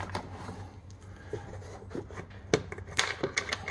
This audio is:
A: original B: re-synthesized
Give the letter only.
A